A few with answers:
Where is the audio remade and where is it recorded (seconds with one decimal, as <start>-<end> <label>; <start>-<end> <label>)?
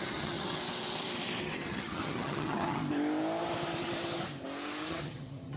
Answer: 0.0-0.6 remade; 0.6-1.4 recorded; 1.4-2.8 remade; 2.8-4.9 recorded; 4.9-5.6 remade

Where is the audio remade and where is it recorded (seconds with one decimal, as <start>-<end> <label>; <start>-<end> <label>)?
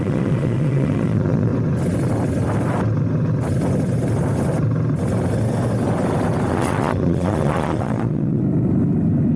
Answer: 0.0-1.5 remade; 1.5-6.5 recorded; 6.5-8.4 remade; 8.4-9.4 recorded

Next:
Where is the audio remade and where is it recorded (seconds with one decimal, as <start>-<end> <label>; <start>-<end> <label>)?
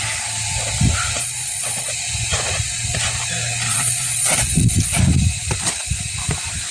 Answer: 0.0-1.2 recorded; 1.2-1.9 remade; 1.9-3.7 recorded; 3.7-5.0 remade; 5.0-6.7 recorded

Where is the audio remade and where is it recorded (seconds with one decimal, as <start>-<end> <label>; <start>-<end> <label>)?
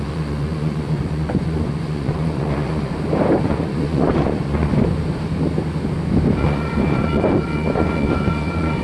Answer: 0.0-2.9 remade; 2.9-3.4 recorded; 3.4-4.7 remade; 4.7-6.4 recorded; 6.4-8.8 remade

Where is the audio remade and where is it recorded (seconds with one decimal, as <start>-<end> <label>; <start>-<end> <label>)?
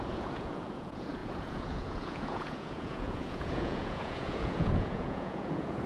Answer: 0.0-5.9 remade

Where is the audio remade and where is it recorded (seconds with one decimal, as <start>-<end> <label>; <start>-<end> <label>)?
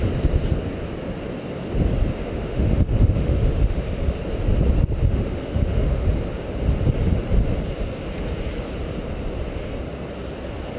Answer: 0.0-2.2 recorded; 2.2-4.2 remade; 4.2-5.0 recorded; 5.0-6.1 remade; 6.1-10.8 recorded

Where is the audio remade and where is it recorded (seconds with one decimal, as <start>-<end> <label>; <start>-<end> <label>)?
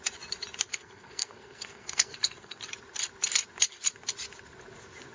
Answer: 0.0-0.7 recorded; 0.7-2.6 remade; 2.6-5.1 recorded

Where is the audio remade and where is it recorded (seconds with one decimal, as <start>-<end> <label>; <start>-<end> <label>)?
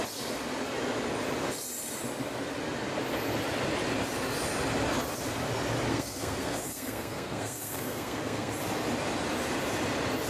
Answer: 0.0-5.9 recorded; 5.9-8.5 remade; 8.5-10.3 recorded